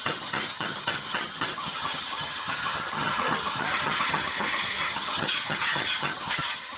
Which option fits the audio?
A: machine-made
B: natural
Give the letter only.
A